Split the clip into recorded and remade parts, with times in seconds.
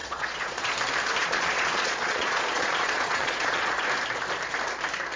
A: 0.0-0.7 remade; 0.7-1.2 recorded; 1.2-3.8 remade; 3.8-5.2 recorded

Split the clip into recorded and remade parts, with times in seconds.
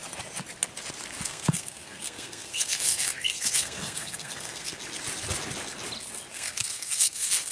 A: 0.0-1.2 recorded; 1.2-4.8 remade; 4.8-6.3 recorded; 6.3-7.5 remade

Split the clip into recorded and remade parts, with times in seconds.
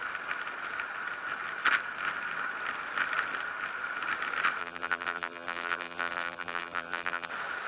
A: 0.0-4.6 recorded; 4.6-7.3 remade; 7.3-7.7 recorded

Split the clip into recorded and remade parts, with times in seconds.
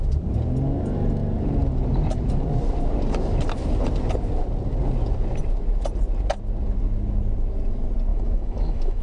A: 0.0-8.1 recorded; 8.1-9.0 remade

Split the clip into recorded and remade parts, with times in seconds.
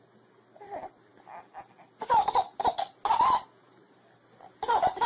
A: 0.0-5.1 recorded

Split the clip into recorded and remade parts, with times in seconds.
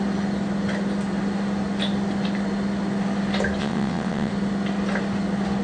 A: 0.0-3.6 recorded; 3.6-4.3 remade; 4.3-5.6 recorded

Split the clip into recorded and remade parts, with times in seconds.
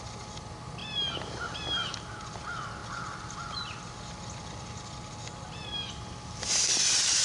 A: 0.0-7.2 recorded